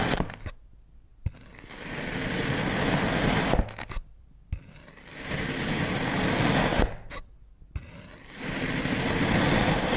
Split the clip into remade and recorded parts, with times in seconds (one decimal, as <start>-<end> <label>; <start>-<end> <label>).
0.0-10.0 recorded

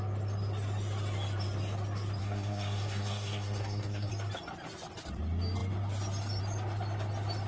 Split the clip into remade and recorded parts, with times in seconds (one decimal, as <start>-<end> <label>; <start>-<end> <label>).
0.0-2.2 recorded; 2.2-4.1 remade; 4.1-7.5 recorded

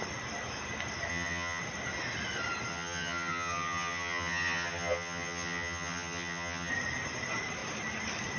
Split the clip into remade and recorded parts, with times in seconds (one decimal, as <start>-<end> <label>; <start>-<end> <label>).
0.0-1.1 recorded; 1.1-1.6 remade; 1.6-2.7 recorded; 2.7-6.7 remade; 6.7-8.4 recorded

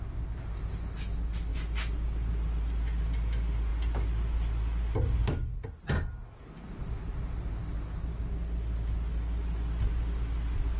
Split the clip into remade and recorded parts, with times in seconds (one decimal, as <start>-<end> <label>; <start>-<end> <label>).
0.0-10.8 recorded

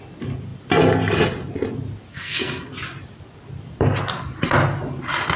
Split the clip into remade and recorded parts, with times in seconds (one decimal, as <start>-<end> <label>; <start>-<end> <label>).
0.0-2.1 recorded; 2.1-2.7 remade; 2.7-5.4 recorded